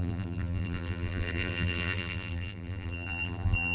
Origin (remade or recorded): remade